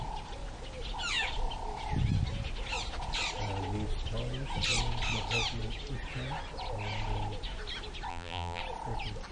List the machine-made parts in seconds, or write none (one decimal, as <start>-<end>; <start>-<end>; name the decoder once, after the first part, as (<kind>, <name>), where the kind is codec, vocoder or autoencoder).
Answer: 8.1-8.6 (vocoder, BigVGAN v2)